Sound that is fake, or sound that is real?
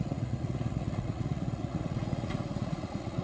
fake